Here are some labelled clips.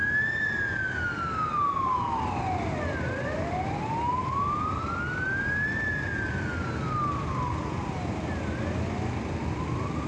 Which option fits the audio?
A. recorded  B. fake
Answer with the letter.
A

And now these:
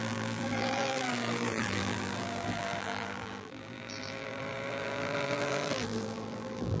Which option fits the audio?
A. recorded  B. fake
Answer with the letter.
B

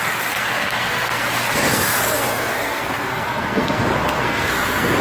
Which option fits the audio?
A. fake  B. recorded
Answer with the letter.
A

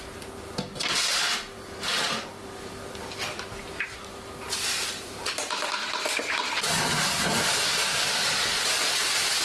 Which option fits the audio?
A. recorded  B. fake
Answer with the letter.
A